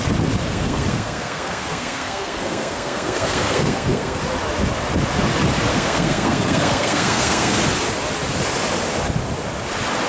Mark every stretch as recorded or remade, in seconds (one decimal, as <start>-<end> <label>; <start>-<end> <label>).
0.0-0.5 recorded; 0.5-4.2 remade; 4.2-5.7 recorded; 5.7-7.6 remade; 7.6-10.1 recorded